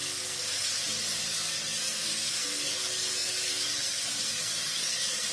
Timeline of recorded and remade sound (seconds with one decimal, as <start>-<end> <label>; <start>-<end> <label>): 0.0-0.7 remade; 0.7-1.2 recorded; 1.2-5.3 remade